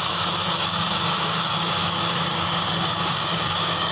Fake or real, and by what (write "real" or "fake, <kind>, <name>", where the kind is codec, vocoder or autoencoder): fake, codec, DAC